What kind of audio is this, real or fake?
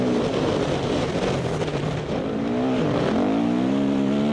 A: real